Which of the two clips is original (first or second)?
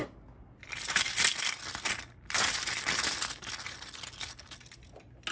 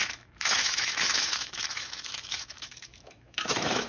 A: first